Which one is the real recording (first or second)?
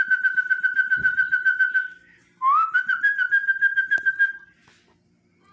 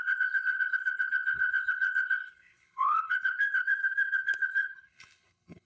first